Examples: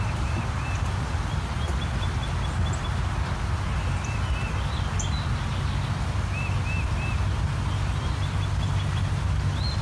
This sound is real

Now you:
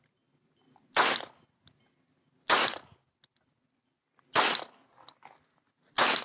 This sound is real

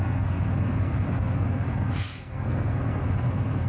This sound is fake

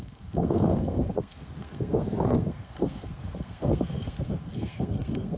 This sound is fake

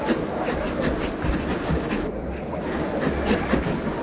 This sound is real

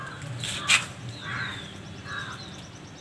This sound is real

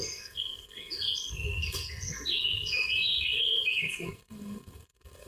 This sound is fake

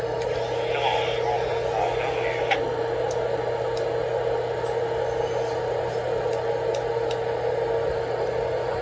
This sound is real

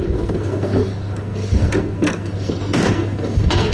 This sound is fake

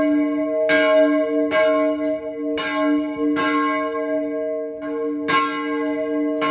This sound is real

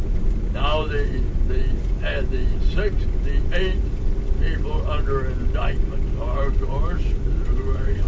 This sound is real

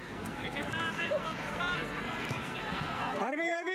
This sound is fake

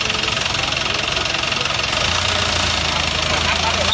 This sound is real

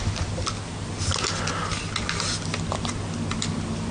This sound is real